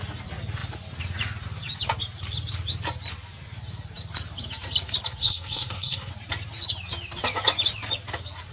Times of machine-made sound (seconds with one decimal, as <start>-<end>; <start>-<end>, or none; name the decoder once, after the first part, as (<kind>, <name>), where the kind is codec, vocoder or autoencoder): 5.2-6.1 (codec, SNAC)